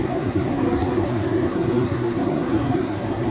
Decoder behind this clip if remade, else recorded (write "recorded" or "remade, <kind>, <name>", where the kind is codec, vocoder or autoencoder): remade, codec, SNAC